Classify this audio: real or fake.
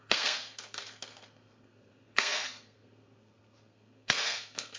fake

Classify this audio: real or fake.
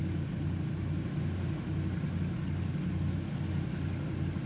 real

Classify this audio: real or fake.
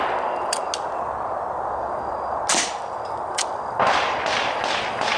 real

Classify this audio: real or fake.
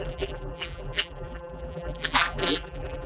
fake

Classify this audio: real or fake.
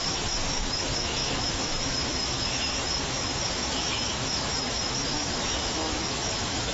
fake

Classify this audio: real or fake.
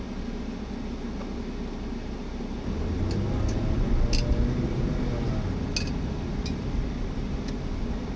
real